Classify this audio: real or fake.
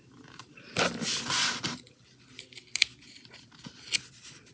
real